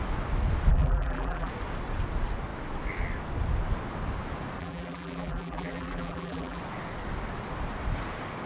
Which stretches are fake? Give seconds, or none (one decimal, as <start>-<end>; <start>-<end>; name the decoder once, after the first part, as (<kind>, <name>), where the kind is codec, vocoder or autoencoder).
0.7-1.5 (vocoder, BigVGAN v2); 4.6-6.6